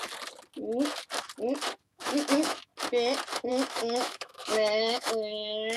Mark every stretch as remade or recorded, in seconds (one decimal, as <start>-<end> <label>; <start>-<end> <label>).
0.0-1.8 recorded; 1.8-2.7 remade; 2.7-3.5 recorded; 3.5-5.8 remade